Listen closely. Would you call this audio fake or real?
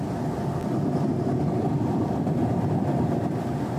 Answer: real